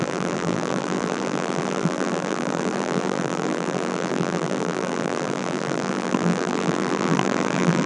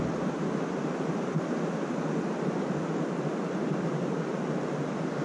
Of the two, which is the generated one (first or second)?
first